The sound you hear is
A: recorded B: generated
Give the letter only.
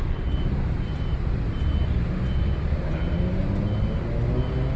A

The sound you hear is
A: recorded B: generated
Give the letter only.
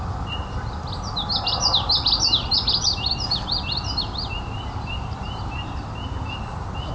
A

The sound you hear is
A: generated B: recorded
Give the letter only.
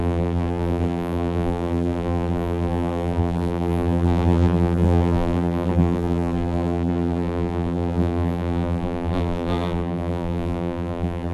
A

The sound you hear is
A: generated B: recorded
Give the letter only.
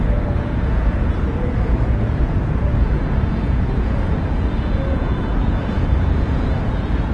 A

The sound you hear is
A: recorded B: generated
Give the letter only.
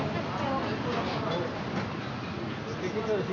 A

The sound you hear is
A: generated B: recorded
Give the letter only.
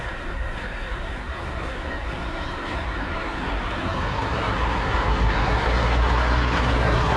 A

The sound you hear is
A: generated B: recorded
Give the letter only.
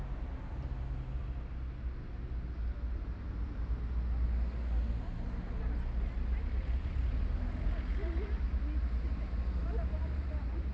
B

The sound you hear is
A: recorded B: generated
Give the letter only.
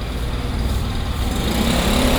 B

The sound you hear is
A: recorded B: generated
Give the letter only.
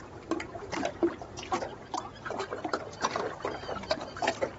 B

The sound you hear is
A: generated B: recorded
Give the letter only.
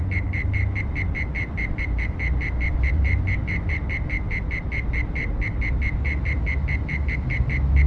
B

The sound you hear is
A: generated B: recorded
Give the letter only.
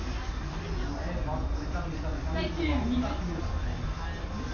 B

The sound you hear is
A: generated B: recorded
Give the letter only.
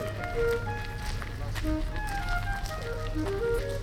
B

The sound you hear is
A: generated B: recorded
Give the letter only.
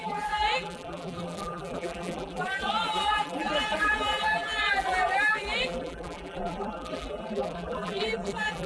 A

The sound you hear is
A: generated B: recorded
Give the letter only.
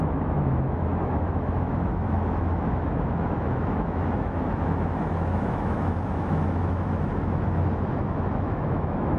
A